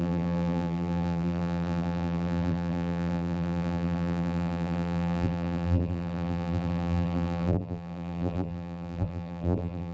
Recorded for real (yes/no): no